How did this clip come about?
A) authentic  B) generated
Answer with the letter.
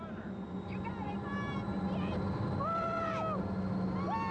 A